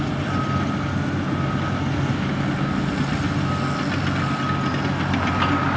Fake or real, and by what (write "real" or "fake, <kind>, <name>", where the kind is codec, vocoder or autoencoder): real